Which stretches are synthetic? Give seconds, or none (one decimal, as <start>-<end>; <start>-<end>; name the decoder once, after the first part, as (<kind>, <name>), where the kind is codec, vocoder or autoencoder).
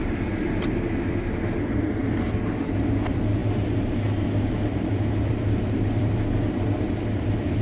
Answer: 0.0-3.4 (vocoder, BigVGAN v2); 4.2-7.6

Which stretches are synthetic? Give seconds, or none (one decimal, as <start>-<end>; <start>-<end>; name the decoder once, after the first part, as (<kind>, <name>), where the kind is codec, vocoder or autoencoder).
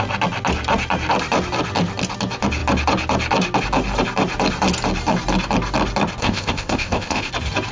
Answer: 6.2-7.3 (codec, ZipCodec)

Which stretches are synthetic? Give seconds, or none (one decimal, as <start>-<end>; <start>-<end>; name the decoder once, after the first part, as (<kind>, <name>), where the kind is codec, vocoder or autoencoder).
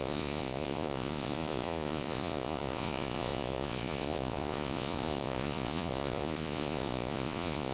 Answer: 0.0-7.7 (vocoder, Vocos)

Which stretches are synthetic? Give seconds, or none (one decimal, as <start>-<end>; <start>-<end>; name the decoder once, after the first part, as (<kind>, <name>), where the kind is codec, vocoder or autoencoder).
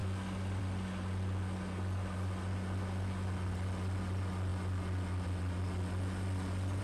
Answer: none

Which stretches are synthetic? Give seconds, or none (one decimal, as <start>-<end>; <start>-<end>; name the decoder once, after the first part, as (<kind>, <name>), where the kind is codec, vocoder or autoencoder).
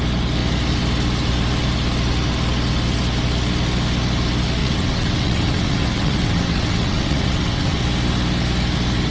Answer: 4.6-7.8 (vocoder, WaveNeXt)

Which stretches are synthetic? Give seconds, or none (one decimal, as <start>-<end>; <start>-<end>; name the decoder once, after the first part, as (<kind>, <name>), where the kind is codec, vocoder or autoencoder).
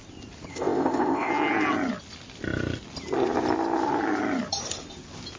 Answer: 0.5-1.3 (codec, ZipCodec)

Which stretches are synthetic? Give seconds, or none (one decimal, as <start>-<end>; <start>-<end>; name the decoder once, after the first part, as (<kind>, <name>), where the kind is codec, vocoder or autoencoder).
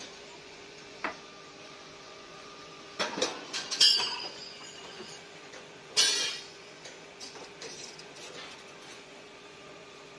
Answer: 0.0-1.1 (vocoder, Vocos); 1.6-10.2